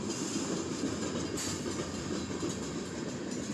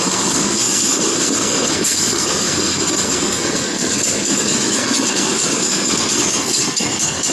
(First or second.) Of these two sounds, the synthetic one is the second